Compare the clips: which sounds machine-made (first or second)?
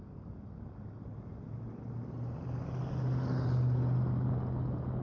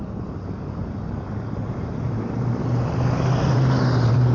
second